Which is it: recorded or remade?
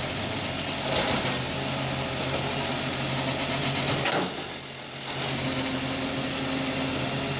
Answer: recorded